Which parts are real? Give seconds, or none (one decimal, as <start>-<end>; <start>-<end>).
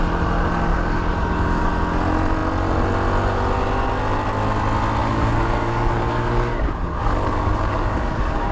0.0-0.7; 1.7-5.0